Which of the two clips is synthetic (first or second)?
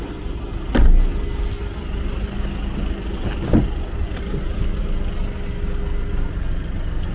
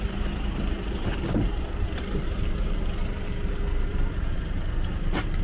second